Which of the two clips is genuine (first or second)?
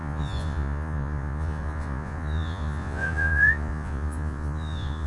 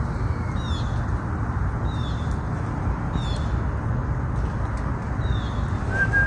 second